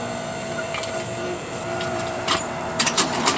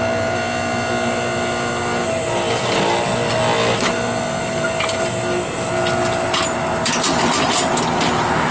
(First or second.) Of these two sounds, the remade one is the first